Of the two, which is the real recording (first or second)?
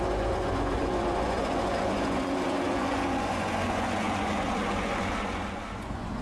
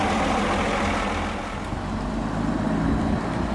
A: second